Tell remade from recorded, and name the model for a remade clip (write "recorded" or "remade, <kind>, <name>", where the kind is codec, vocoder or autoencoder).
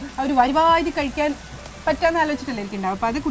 recorded